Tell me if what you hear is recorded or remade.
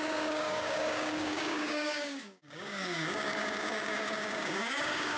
remade